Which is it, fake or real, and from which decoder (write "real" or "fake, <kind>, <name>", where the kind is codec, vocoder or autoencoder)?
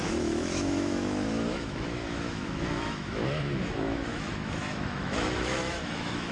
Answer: fake, autoencoder, DAC-VAE